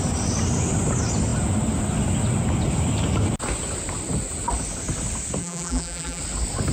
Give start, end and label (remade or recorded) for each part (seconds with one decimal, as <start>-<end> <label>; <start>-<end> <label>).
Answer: 0.0-5.4 recorded; 5.4-6.2 remade; 6.2-6.7 recorded